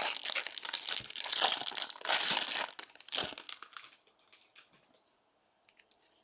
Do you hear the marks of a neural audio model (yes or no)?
no